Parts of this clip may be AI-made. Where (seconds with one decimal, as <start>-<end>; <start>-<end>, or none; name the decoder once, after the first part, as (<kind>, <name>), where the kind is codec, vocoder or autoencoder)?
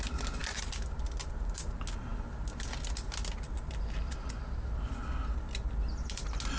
none